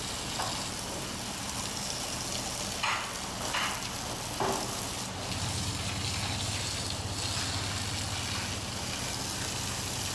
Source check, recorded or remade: recorded